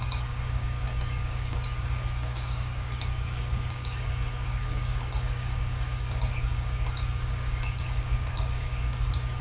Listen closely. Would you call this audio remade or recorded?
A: remade